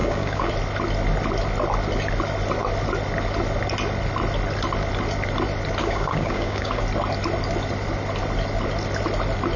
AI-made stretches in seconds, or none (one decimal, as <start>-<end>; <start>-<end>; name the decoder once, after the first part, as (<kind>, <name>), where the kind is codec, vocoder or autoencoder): 0.0-0.5 (codec, DAC); 5.8-6.8